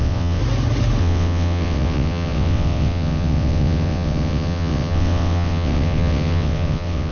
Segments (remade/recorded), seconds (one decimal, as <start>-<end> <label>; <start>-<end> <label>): 0.0-0.4 remade; 0.4-1.0 recorded; 1.0-7.1 remade